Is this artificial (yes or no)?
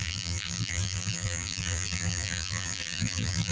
yes